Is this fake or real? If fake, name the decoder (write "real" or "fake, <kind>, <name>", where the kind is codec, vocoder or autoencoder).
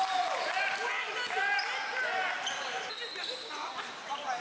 real